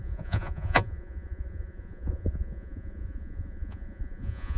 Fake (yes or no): yes